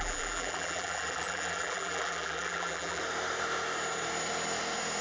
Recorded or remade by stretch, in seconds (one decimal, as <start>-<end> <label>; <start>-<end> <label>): 0.0-3.0 remade; 3.0-5.0 recorded